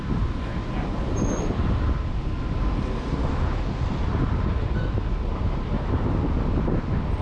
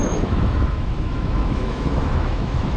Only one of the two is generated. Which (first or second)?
second